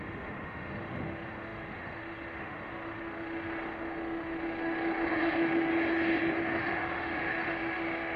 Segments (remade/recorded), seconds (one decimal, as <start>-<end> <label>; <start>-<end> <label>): 0.0-5.7 remade; 5.7-6.4 recorded; 6.4-8.2 remade